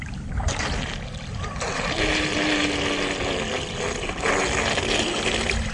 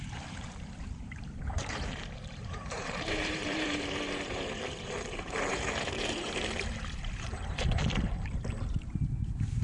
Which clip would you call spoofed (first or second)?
second